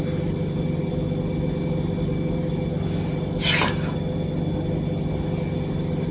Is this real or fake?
real